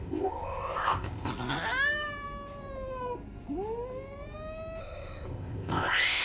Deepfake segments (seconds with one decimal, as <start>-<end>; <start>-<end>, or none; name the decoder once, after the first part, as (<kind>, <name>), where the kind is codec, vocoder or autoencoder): 0.0-1.3 (codec, ZipCodec); 4.8-6.2